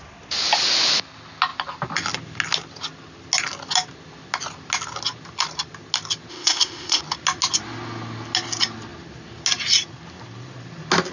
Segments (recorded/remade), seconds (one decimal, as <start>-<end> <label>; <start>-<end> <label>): 0.0-6.3 recorded; 6.3-7.0 remade; 7.0-11.1 recorded